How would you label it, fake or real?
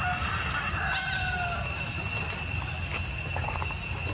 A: real